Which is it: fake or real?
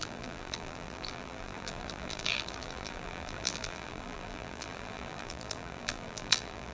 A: fake